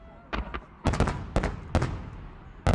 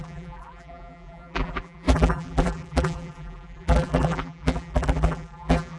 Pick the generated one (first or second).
second